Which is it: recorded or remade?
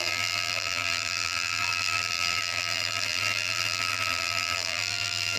remade